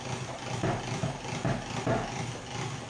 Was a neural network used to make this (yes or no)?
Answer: no